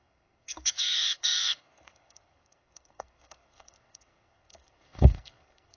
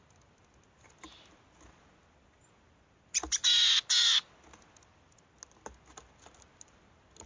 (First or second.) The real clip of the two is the second